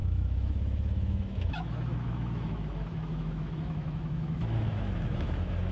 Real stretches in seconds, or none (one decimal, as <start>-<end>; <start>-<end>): none